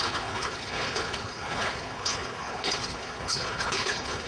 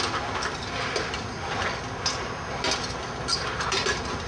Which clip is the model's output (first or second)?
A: first